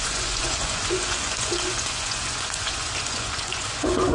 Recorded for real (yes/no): no